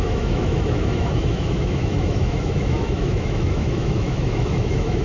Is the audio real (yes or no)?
no